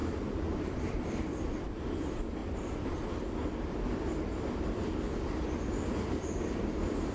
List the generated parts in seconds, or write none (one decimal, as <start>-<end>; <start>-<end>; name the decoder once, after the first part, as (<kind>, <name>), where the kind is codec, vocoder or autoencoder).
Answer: 0.0-1.0 (vocoder, BigVGAN v2); 2.4-6.4